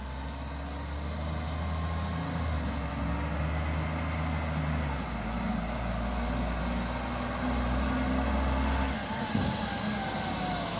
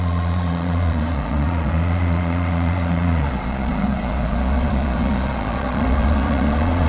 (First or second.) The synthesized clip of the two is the second